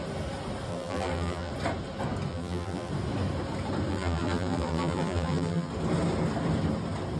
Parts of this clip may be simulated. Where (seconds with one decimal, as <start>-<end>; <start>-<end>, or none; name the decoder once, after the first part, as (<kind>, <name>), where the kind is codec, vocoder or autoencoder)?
0.7-1.5 (vocoder, BigVGAN v2); 2.3-2.9; 3.9-5.7